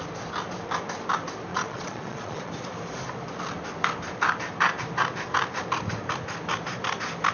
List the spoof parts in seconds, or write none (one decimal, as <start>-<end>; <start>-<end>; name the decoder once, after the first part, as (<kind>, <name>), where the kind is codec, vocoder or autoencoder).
1.5-2.5 (vocoder, Vocos)